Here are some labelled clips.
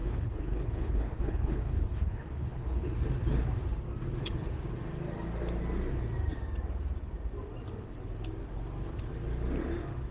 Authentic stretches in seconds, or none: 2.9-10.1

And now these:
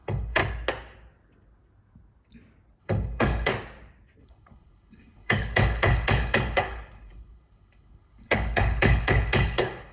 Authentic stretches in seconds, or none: 0.4-2.8; 3.5-4.2

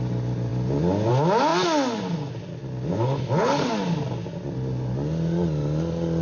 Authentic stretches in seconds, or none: 0.0-2.9; 3.6-6.2

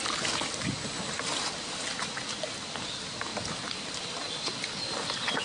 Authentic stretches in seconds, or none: 0.0-5.4